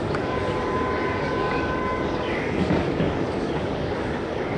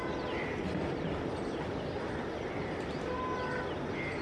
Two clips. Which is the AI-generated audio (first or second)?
first